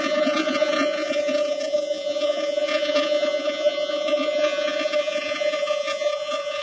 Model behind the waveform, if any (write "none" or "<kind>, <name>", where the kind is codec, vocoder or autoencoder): vocoder, Vocos